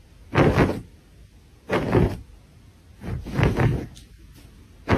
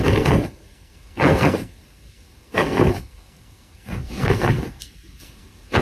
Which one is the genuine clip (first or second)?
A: first